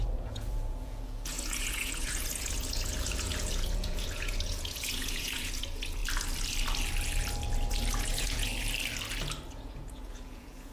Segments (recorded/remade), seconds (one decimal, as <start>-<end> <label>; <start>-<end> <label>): 0.0-6.0 remade; 6.0-8.0 recorded; 8.0-8.5 remade; 8.5-9.5 recorded; 9.5-10.7 remade